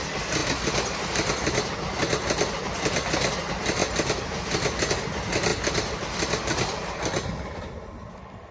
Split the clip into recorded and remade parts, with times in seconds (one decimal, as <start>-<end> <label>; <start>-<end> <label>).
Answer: 0.0-8.5 recorded